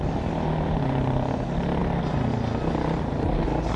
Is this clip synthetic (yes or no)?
no